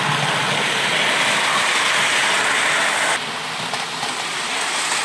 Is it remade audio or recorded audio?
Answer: recorded